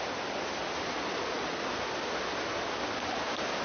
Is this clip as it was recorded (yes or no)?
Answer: yes